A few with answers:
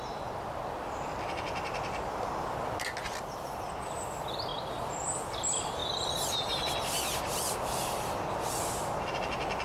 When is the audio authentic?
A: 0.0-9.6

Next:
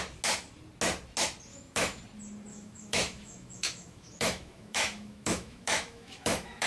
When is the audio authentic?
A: 0.0-1.5; 2.0-2.5

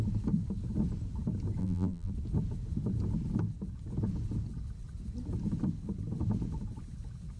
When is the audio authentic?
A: 0.0-1.6; 2.1-7.4